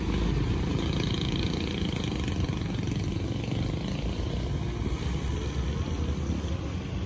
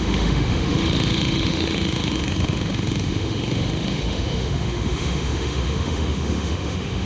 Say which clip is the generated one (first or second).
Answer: second